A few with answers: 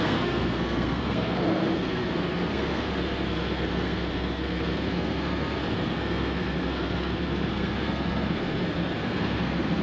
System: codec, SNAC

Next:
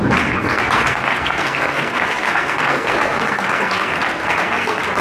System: codec, SNAC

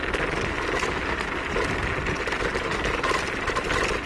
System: none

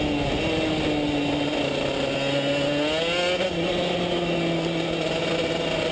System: none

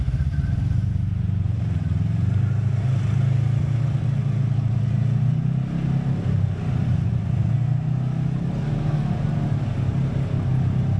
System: none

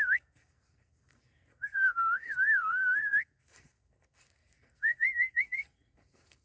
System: codec, SNAC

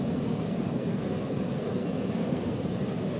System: codec, SNAC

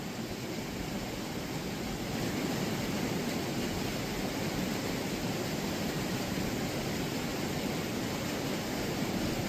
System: none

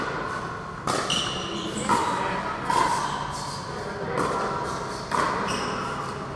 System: none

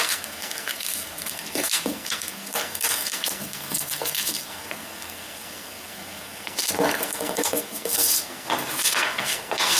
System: codec, SNAC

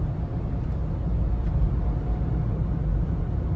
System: none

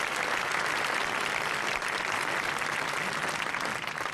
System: none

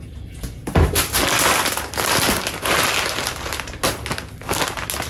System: none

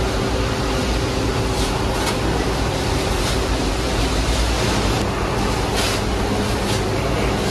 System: none